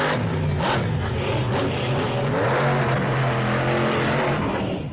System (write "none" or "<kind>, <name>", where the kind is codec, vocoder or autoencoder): none